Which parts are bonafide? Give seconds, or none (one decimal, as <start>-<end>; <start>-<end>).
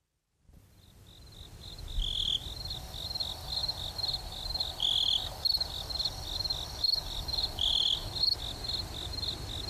0.0-3.6; 7.7-9.7